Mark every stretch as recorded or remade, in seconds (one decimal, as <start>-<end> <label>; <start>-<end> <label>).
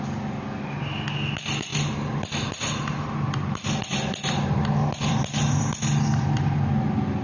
0.0-7.2 recorded